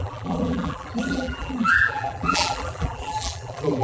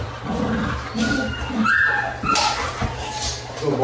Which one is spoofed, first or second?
first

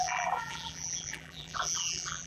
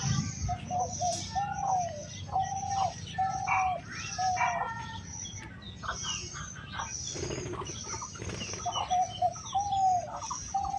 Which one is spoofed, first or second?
first